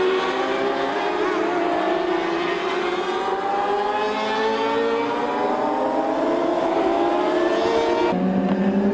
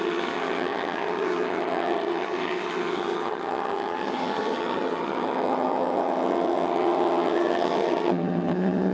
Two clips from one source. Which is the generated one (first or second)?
second